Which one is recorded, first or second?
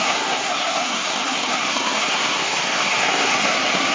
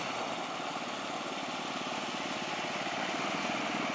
second